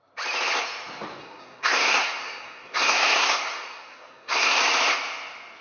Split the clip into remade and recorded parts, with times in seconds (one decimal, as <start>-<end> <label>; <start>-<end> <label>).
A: 0.0-1.2 recorded; 1.2-4.6 remade; 4.6-5.6 recorded